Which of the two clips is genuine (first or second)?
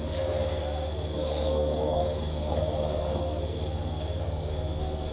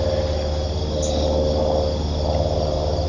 second